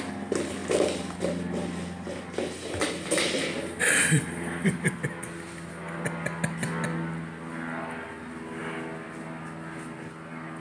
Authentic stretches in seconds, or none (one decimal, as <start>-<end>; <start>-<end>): 0.0-10.6